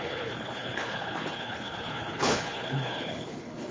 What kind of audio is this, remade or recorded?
remade